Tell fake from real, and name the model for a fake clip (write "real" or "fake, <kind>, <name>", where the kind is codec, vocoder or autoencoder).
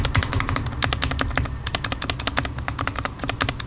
real